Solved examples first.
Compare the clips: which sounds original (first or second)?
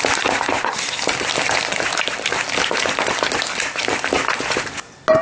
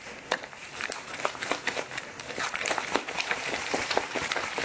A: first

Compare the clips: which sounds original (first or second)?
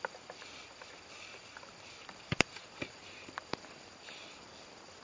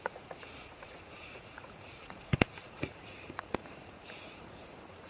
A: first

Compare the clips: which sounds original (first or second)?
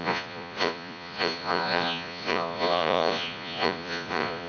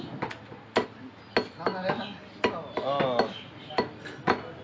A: second